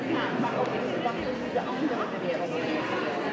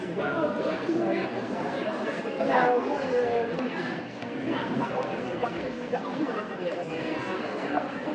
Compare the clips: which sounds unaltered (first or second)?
first